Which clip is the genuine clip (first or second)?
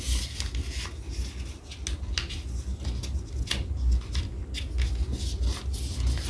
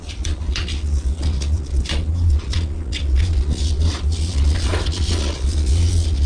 first